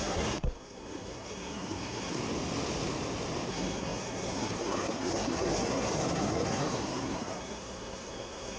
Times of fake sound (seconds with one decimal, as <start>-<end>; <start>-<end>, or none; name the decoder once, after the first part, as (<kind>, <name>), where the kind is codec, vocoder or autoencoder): 0.0-2.2 (codec, SNAC); 3.5-8.6